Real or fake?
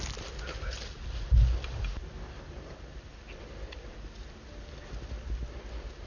real